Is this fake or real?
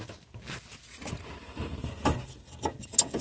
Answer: real